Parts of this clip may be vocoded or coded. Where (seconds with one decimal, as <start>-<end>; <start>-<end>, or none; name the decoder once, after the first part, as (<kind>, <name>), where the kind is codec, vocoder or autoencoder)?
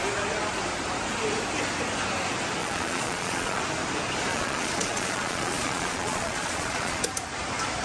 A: 2.6-3.6 (vocoder, Vocos); 4.3-7.0